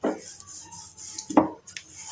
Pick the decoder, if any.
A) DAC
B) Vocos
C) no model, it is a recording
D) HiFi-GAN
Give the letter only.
C